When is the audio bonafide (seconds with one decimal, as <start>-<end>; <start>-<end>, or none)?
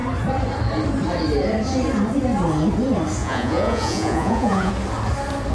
0.0-3.2; 4.7-5.5